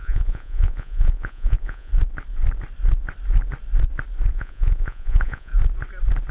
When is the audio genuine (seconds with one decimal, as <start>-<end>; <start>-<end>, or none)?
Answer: 1.9-4.3; 5.5-6.3